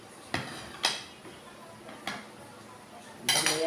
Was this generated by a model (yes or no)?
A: no